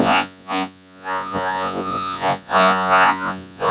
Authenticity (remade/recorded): remade